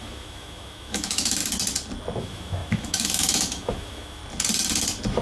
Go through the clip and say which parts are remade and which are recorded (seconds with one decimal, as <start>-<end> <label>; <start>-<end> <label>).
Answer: 0.0-1.4 remade; 1.4-2.2 recorded; 2.2-4.2 remade; 4.2-5.2 recorded